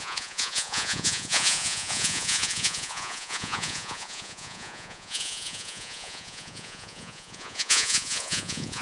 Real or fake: fake